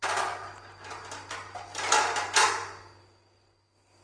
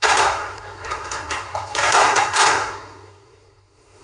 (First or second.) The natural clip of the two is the first